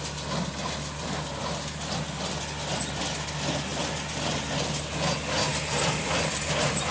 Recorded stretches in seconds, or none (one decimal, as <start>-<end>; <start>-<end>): 0.0-5.5